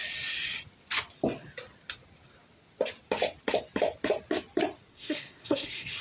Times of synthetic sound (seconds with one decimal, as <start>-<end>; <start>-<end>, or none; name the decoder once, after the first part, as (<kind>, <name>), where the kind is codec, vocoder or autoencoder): 4.9-6.0 (codec, SNAC)